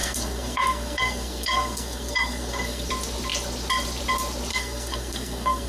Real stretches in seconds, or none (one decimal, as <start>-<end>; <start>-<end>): 2.9-4.5